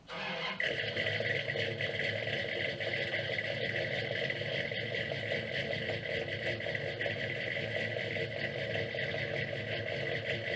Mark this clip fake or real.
real